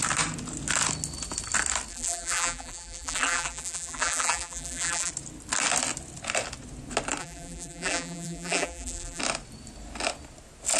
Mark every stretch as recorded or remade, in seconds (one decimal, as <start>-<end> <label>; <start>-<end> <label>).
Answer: 0.0-1.9 recorded; 1.9-5.1 remade; 5.1-7.2 recorded; 7.2-9.2 remade; 9.2-10.8 recorded